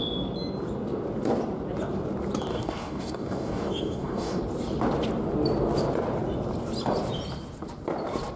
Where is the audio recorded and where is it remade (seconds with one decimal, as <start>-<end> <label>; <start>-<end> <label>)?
0.0-2.5 recorded; 2.5-4.4 remade; 4.4-8.4 recorded